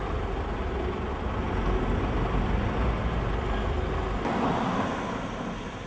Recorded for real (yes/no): yes